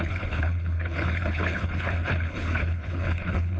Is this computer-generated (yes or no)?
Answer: yes